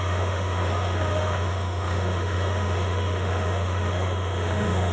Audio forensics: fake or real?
fake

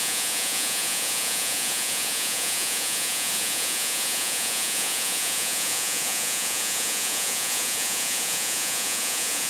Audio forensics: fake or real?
fake